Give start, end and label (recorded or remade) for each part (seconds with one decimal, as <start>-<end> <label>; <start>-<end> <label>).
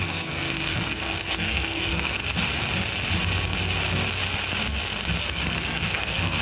0.0-2.2 remade; 2.2-5.2 recorded; 5.2-6.4 remade